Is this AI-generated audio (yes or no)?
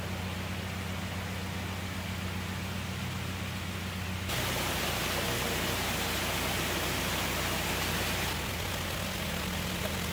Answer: no